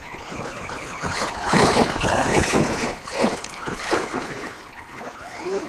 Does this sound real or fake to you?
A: fake